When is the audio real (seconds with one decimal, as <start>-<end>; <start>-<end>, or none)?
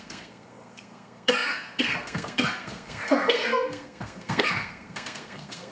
none